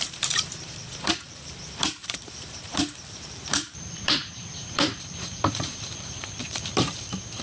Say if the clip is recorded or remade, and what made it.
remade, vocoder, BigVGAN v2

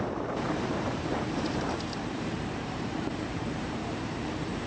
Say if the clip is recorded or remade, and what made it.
remade, vocoder, BigVGAN v2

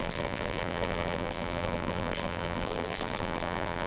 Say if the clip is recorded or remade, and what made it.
remade, vocoder, BigVGAN v2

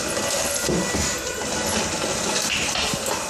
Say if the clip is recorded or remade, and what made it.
recorded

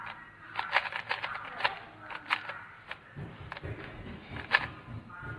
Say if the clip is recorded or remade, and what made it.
recorded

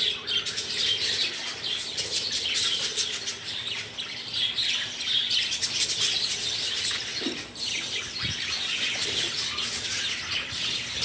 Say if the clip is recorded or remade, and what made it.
recorded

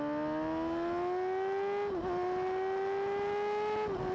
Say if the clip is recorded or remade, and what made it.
recorded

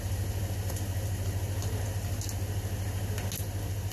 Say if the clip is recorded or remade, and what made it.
recorded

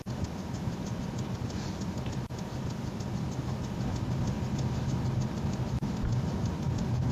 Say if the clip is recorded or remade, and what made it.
recorded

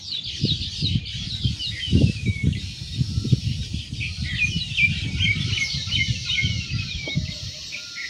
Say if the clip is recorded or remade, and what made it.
remade, vocoder, BigVGAN v2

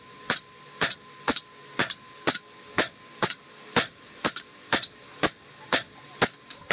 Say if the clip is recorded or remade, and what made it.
remade, vocoder, BigVGAN v2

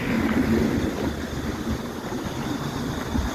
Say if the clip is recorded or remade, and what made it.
recorded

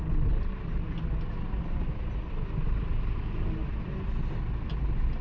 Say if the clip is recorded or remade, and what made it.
recorded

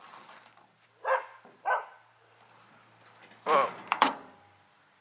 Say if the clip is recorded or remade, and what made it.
remade, vocoder, BigVGAN v2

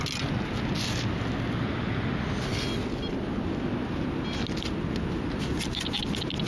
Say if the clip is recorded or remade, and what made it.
recorded